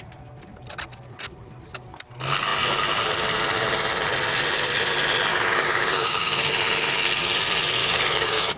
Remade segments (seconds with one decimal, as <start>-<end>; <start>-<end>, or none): 5.3-6.5; 7.8-8.6